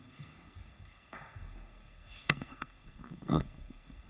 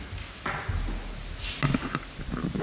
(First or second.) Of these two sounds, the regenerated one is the first